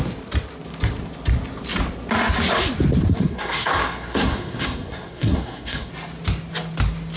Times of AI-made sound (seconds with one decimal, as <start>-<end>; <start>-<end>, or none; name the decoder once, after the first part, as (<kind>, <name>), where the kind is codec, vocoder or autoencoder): 3.1-5.9 (codec, SNAC)